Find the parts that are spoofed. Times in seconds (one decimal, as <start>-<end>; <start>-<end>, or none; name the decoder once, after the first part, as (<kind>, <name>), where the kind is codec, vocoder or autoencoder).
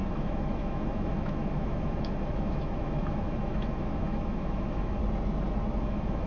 0.0-5.0 (autoencoder, DAC-VAE); 5.8-6.3